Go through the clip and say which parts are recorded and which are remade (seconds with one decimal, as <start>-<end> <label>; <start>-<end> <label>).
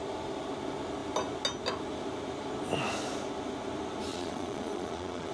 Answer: 0.0-4.1 recorded; 4.1-5.3 remade